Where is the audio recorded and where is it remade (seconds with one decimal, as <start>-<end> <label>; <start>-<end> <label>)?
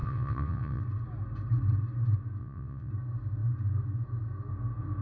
0.0-0.8 remade; 0.8-2.4 recorded; 2.4-2.9 remade; 2.9-5.0 recorded